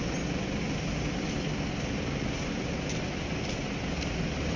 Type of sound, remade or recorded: recorded